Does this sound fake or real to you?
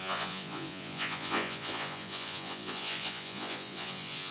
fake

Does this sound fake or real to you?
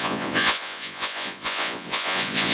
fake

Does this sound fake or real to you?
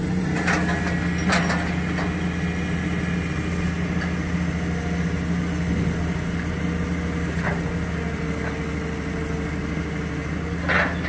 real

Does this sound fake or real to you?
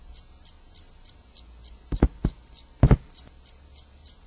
real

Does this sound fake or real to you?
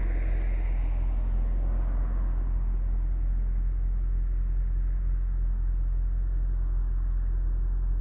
real